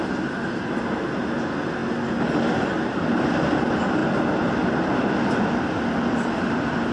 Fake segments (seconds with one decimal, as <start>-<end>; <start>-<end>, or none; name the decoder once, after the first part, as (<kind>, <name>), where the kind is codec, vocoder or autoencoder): none